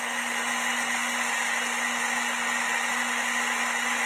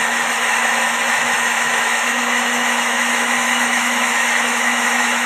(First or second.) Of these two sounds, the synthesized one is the second